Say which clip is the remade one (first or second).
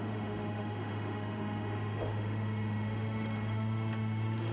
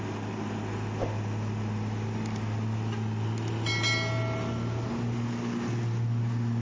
first